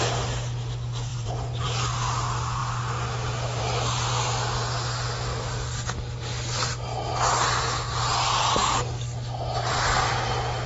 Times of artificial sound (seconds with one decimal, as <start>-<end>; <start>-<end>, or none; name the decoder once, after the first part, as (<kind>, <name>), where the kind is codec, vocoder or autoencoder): 1.1-1.8 (vocoder, BigVGAN v2)